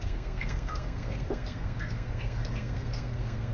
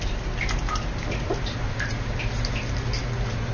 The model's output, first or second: first